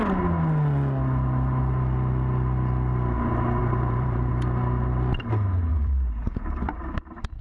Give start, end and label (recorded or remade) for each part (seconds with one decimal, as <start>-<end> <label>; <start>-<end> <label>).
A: 0.0-3.6 recorded; 3.6-4.3 remade; 4.3-5.7 recorded; 5.7-6.9 remade; 6.9-7.4 recorded